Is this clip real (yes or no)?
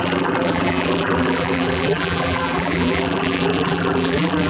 no